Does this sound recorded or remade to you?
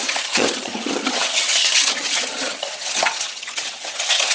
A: remade